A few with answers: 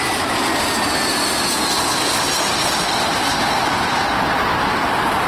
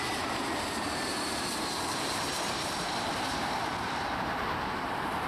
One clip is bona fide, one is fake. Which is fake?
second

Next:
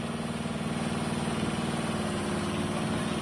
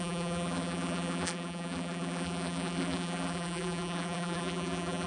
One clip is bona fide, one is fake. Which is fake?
second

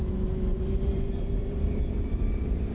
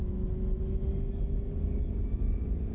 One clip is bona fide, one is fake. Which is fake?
first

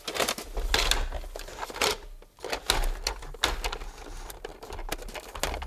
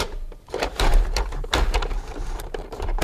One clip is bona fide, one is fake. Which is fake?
second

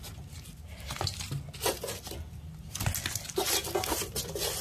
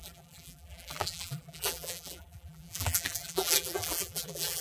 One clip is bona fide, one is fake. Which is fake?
second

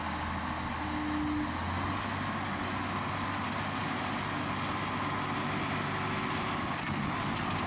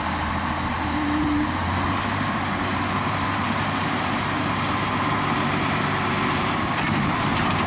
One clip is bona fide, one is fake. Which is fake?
second